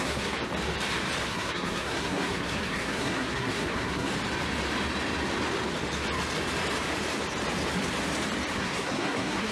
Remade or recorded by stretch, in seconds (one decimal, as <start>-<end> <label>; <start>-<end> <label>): 0.0-0.4 remade; 0.4-1.2 recorded; 1.2-4.1 remade; 4.1-8.5 recorded; 8.5-9.5 remade